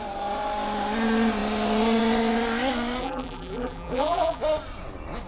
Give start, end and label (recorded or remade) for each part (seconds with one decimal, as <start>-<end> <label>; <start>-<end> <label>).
0.0-3.0 recorded; 3.0-4.4 remade; 4.4-5.3 recorded